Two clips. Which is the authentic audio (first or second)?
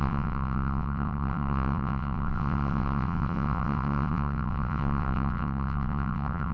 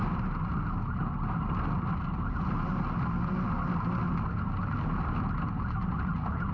second